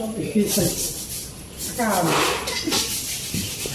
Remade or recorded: recorded